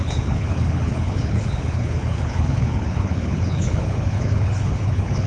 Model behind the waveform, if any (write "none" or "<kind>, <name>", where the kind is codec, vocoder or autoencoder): codec, HILCodec